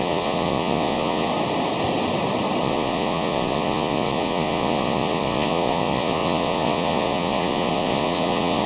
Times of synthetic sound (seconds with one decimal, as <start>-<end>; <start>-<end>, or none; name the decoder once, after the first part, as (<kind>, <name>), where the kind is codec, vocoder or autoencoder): 0.0-1.3 (vocoder, Vocos); 2.6-8.7